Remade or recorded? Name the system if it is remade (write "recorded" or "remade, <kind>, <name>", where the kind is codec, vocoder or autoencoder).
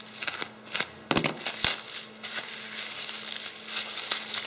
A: recorded